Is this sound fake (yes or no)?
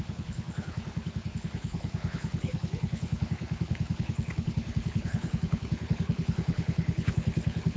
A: yes